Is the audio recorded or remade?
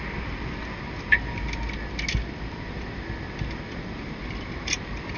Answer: recorded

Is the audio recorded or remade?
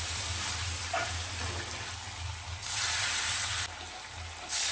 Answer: recorded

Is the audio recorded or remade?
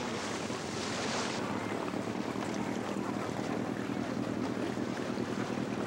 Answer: recorded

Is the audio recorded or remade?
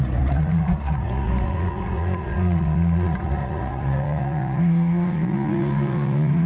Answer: remade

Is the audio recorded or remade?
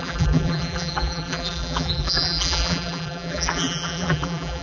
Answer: remade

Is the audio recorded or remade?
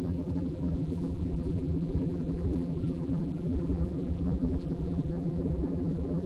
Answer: remade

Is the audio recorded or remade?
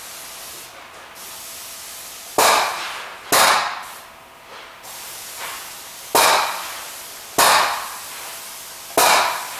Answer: recorded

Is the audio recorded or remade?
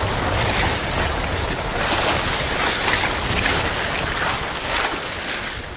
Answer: recorded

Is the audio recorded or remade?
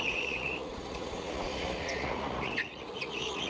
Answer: remade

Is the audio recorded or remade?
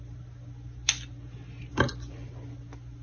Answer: recorded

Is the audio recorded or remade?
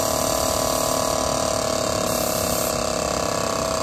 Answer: recorded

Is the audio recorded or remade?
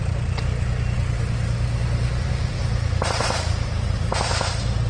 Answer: recorded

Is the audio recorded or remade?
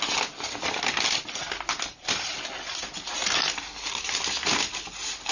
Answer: recorded